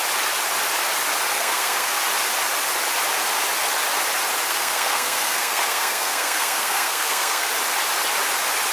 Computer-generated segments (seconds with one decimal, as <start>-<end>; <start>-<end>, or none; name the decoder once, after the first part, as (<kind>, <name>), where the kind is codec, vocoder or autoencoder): 1.3-2.0 (codec, SNAC); 4.5-7.5